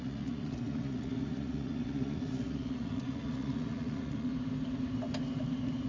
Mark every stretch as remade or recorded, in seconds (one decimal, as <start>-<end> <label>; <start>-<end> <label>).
0.0-4.3 remade; 4.3-5.9 recorded